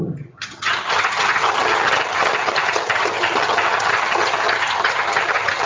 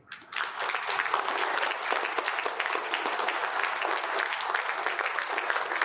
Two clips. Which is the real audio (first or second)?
second